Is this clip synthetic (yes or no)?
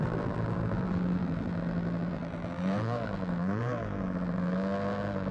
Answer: yes